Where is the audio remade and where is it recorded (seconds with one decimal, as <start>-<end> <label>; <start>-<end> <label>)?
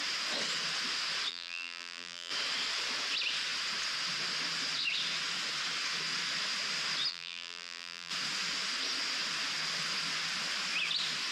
0.0-1.3 recorded; 1.3-2.3 remade; 2.3-7.1 recorded; 7.1-8.1 remade; 8.1-11.3 recorded